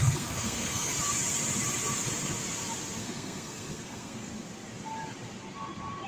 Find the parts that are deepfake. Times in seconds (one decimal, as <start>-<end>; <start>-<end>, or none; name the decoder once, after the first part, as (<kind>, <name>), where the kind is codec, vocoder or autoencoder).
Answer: 0.0-0.9 (codec, SNAC); 3.0-4.3